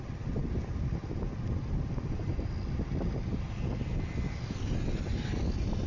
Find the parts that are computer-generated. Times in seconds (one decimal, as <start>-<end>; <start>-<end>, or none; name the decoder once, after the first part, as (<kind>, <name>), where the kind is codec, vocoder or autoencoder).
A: none